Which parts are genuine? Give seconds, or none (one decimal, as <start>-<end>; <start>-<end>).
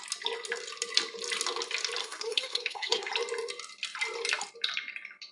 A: 0.0-2.0; 3.1-5.3